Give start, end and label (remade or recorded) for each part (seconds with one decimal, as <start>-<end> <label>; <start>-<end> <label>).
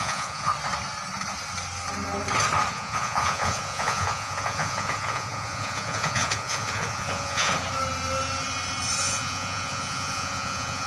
0.0-0.5 remade; 0.5-2.7 recorded; 2.7-7.5 remade; 7.5-9.0 recorded; 9.0-10.9 remade